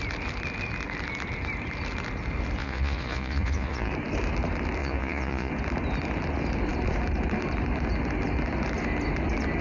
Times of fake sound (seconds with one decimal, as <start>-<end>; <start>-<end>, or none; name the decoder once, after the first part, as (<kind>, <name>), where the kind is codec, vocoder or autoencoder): 2.6-3.9 (vocoder, Vocos); 4.8-5.5